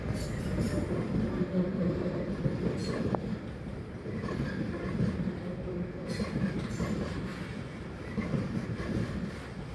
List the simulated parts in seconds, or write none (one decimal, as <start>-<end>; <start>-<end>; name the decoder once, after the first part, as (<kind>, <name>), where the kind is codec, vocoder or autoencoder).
none